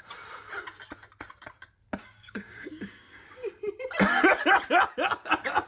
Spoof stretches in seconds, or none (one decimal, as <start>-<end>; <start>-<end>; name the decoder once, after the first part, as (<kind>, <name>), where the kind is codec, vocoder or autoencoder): 2.0-3.5 (codec, DAC)